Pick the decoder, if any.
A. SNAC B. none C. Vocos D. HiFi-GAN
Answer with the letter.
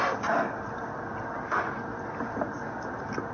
B